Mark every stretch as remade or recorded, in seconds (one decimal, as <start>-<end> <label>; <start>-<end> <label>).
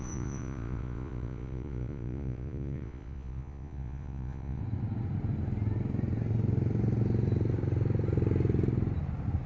0.0-4.6 remade; 4.6-9.5 recorded